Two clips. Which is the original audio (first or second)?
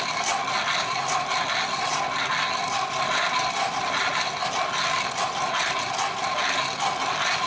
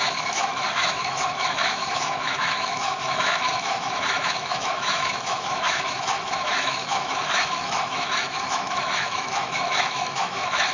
first